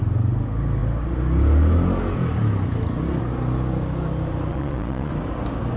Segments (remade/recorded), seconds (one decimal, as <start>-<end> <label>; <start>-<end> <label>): 0.0-4.5 recorded; 4.5-5.1 remade; 5.1-5.8 recorded